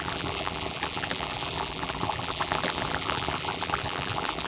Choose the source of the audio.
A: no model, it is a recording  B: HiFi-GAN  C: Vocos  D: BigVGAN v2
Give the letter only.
D